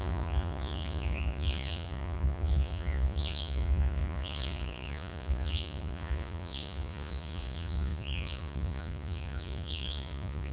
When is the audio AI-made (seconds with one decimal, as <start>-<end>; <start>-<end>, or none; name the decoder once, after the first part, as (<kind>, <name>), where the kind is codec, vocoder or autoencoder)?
0.0-10.5 (vocoder, Vocos)